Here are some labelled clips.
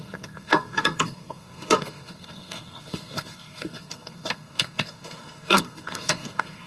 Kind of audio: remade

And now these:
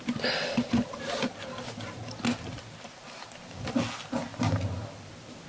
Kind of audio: recorded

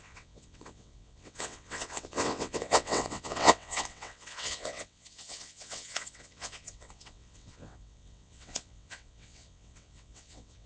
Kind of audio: remade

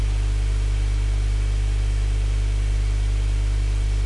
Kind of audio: recorded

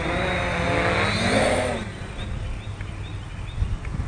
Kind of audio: recorded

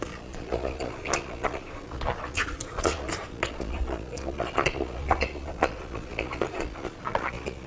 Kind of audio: remade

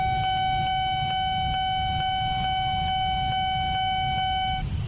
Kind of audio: recorded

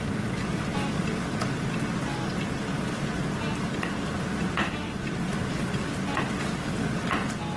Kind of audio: recorded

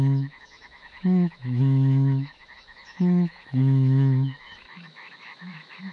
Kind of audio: remade